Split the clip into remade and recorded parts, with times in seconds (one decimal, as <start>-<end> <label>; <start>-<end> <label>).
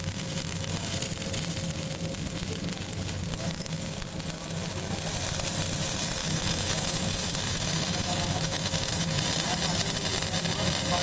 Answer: 0.0-0.9 remade; 0.9-3.3 recorded; 3.3-3.8 remade; 3.8-6.2 recorded; 6.2-9.2 remade; 9.2-11.0 recorded